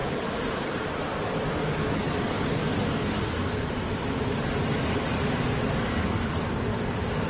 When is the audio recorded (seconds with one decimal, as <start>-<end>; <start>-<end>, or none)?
0.0-1.9; 2.6-5.8; 6.7-7.3